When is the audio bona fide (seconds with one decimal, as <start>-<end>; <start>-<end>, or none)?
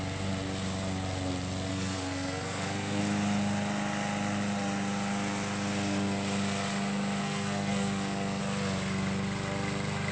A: 0.0-1.7; 3.0-7.2; 8.4-10.1